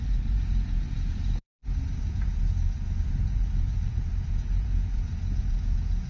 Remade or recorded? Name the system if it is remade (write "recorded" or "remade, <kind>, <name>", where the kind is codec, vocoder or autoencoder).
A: remade, vocoder, Vocos